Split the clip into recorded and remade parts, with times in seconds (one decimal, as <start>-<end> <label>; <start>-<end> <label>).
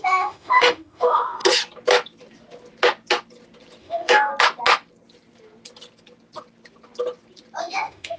0.0-1.4 remade; 1.4-3.8 recorded; 3.8-4.3 remade; 4.3-7.6 recorded; 7.6-8.2 remade